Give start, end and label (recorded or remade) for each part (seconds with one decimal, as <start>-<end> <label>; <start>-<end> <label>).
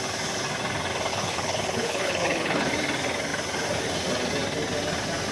0.0-1.1 recorded; 1.1-2.7 remade; 2.7-5.3 recorded